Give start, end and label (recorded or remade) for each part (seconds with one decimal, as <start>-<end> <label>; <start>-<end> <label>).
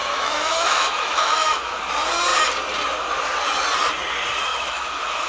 0.0-1.8 remade; 1.8-4.5 recorded; 4.5-5.3 remade